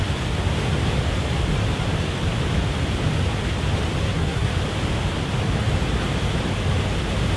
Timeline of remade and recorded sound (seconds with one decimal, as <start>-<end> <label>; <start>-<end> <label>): 0.0-4.0 recorded; 4.0-4.5 remade; 4.5-7.4 recorded